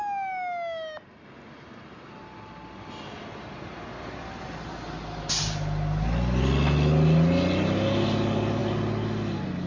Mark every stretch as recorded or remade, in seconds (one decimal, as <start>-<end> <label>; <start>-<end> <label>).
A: 0.0-9.7 recorded